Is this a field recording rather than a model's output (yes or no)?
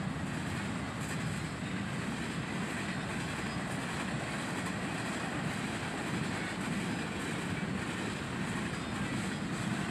yes